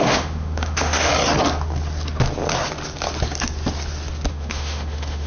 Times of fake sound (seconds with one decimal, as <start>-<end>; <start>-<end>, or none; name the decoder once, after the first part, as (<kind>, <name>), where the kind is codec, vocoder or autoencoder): 0.0-1.1 (autoencoder, DAC-VAE); 4.3-5.3